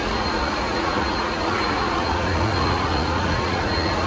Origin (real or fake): fake